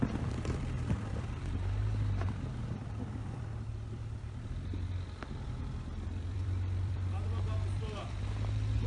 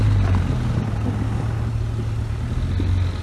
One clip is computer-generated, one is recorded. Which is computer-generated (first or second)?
first